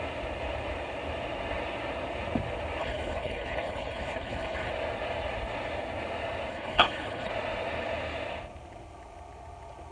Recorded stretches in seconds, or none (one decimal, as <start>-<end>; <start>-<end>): 0.0-2.8; 4.7-6.5; 7.3-9.9